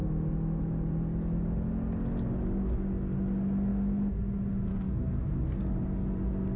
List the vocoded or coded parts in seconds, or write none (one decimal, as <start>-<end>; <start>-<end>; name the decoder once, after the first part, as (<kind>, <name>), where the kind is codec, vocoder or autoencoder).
4.7-5.6 (codec, SNAC)